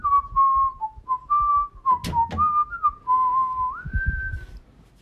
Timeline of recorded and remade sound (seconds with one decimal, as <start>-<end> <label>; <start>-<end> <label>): 0.0-5.0 recorded